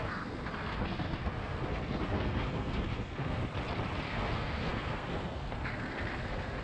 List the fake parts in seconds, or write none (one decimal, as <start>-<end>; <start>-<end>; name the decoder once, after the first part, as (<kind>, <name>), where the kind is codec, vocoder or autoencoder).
0.0-3.4 (codec, SNAC); 4.1-6.6